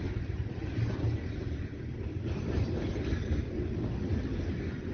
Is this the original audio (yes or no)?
yes